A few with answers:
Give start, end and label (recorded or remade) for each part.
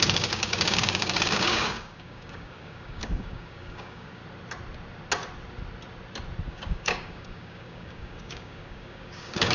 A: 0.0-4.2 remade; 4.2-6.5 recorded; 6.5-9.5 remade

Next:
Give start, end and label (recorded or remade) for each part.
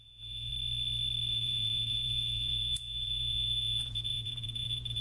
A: 0.0-0.5 remade; 0.5-1.3 recorded; 1.3-5.0 remade